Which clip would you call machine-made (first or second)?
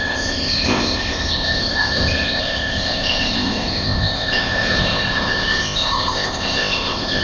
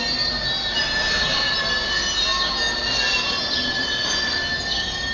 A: first